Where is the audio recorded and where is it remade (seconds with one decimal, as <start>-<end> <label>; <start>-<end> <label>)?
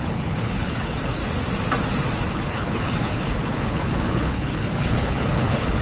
0.0-1.2 remade; 1.2-2.3 recorded; 2.3-5.8 remade